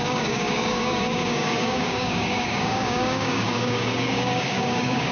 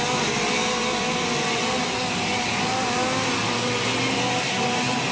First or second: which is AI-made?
first